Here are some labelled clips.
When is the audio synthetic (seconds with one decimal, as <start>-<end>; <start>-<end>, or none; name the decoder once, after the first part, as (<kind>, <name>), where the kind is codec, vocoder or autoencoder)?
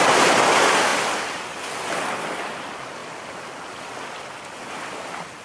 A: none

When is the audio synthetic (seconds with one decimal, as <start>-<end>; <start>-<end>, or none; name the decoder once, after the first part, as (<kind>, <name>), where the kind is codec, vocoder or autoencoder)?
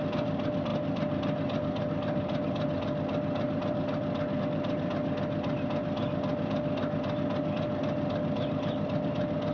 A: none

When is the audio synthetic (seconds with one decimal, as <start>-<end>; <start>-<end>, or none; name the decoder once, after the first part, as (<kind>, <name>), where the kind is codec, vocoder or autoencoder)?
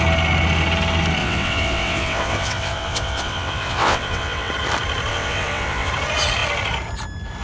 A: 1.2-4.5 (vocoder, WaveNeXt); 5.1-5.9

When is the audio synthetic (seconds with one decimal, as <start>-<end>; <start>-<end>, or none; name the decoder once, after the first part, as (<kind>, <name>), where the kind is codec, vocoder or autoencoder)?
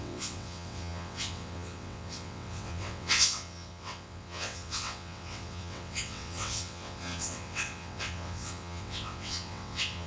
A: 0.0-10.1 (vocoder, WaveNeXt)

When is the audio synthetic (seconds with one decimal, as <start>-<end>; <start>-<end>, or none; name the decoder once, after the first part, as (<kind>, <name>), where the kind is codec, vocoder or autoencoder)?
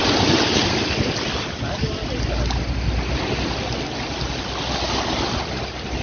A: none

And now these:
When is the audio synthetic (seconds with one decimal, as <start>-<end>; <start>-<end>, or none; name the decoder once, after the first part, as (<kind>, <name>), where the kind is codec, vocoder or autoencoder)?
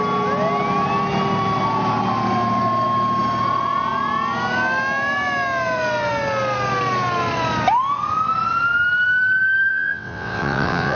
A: 9.7-11.0 (vocoder, WaveNeXt)